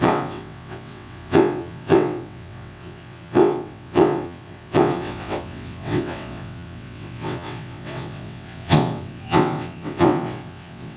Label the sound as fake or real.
fake